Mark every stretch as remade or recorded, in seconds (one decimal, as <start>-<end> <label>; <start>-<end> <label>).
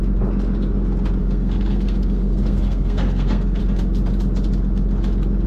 0.0-1.2 recorded; 1.2-3.6 remade; 3.6-5.5 recorded